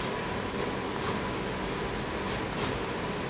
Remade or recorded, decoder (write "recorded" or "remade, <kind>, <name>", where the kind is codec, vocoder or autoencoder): recorded